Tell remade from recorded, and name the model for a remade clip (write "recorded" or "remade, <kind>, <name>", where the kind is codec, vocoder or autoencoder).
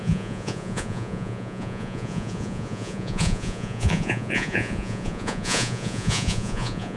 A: remade, vocoder, Vocos